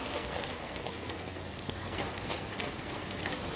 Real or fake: fake